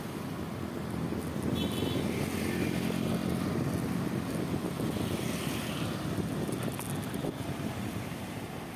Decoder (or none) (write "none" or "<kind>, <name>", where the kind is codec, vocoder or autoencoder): none